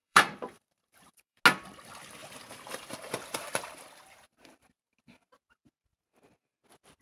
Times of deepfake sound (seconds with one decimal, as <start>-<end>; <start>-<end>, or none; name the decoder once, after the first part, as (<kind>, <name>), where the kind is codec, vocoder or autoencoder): 0.0-1.4 (vocoder, BigVGAN v2); 2.2-3.5